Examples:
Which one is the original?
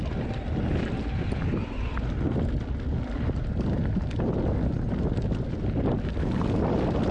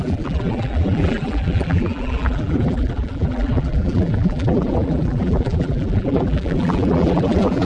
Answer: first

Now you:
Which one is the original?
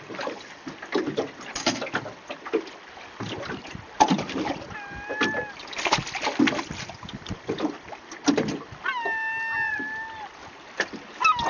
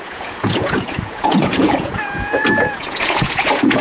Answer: first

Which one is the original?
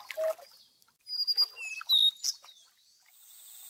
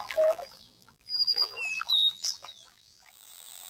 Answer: first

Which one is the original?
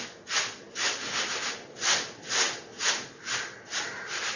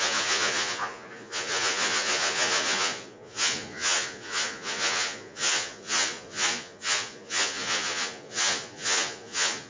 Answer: first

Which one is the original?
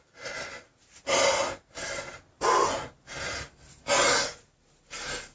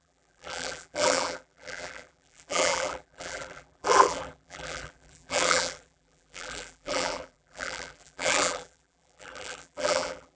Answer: first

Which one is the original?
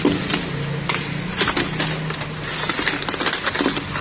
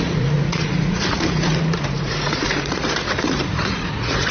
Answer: first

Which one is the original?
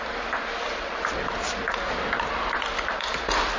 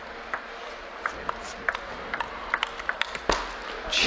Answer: second